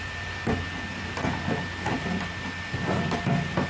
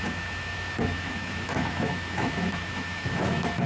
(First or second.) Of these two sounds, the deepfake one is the second